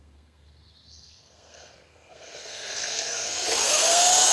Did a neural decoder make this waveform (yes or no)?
yes